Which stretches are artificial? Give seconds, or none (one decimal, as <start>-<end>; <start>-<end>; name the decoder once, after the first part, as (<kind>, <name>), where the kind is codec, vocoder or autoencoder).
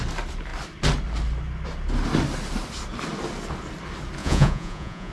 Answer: 4.2-5.1 (vocoder, Vocos)